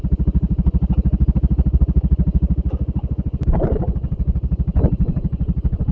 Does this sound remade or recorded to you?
recorded